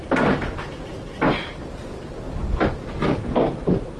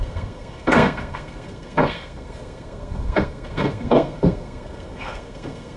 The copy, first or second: second